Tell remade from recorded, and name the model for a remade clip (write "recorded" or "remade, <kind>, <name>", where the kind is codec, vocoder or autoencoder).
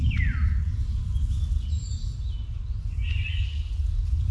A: recorded